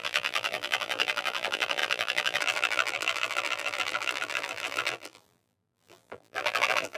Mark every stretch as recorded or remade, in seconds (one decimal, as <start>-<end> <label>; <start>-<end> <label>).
0.0-7.0 remade